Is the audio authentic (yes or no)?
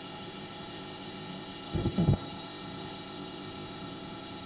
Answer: no